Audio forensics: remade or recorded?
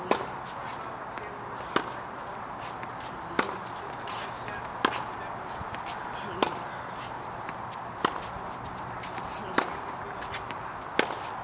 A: recorded